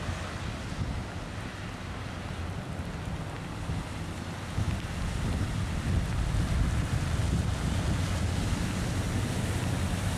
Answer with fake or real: real